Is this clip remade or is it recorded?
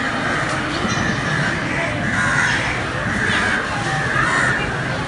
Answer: recorded